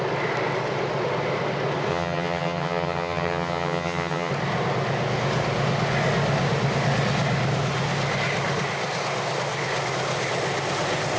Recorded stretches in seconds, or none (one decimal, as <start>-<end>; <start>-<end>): 0.0-1.9; 4.3-11.2